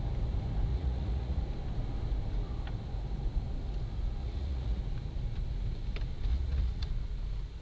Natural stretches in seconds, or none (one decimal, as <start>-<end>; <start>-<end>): 0.0-0.7; 1.4-4.2; 4.8-6.3; 6.9-7.6